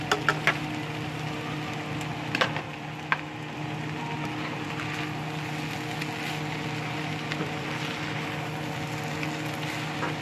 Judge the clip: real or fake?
real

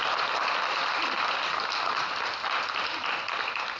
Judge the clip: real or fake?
real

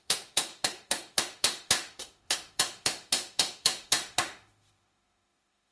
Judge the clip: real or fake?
fake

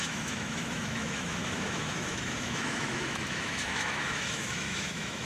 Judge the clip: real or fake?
fake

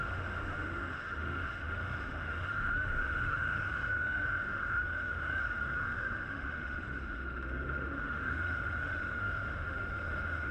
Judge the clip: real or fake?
fake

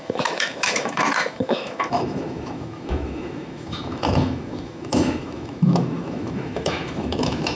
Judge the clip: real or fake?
fake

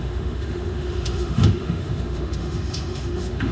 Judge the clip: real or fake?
fake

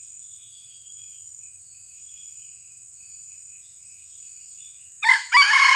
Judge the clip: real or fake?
fake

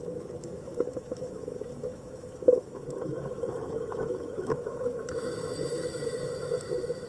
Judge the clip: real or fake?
fake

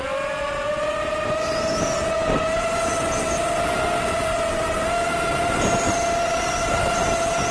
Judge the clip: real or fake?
real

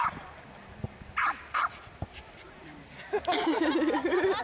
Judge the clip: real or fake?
real